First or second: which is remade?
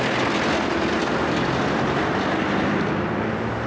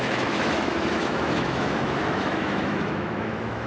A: second